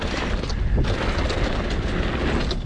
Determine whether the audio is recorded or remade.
recorded